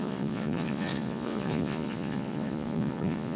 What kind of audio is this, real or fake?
fake